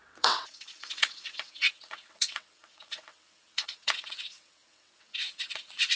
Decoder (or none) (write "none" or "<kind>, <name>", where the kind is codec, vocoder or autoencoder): vocoder, WaveNeXt